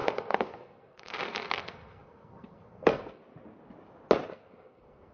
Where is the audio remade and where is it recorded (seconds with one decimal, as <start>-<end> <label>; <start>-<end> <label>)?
0.0-3.2 remade; 3.2-4.3 recorded; 4.3-5.1 remade